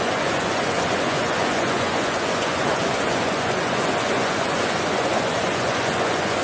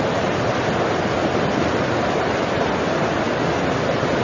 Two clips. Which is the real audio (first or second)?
second